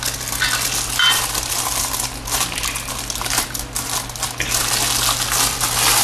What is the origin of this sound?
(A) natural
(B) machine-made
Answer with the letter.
A